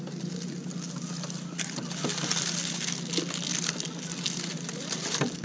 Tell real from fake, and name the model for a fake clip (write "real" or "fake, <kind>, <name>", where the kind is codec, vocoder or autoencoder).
real